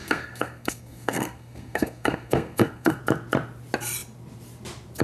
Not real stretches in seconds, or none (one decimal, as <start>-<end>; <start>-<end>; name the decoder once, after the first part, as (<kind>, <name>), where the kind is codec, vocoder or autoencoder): 0.0-3.0 (codec, SNAC)